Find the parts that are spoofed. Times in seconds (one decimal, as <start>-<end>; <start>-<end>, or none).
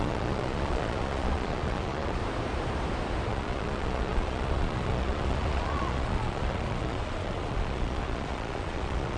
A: 0.0-2.2; 3.3-9.2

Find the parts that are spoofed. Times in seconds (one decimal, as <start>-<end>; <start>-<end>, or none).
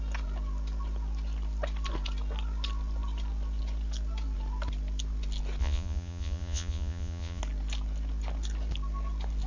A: 5.6-7.4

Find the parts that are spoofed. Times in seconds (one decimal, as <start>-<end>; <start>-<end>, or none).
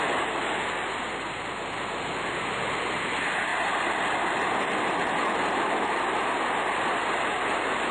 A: none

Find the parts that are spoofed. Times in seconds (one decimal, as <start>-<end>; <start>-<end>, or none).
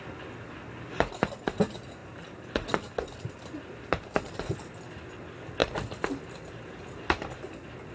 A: 2.0-4.4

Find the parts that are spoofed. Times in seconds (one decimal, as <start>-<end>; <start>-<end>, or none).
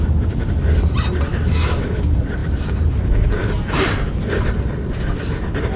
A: 1.3-2.0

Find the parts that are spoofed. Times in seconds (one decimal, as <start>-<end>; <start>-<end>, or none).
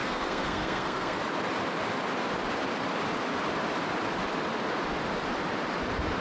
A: 0.0-1.2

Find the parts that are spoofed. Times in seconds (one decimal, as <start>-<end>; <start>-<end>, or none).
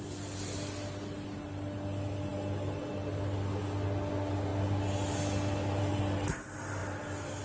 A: none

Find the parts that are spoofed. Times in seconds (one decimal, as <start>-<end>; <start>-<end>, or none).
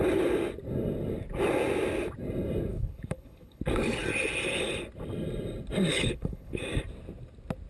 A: 2.7-3.6; 5.9-6.6